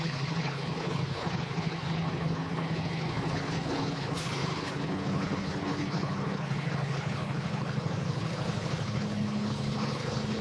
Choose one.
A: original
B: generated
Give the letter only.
B